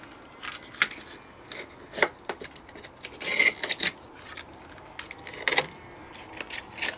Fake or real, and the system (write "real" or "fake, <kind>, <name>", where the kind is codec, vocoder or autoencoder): real